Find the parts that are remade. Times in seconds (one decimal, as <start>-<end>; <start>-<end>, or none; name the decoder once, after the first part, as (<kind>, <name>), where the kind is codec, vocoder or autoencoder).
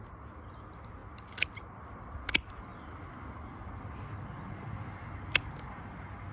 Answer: none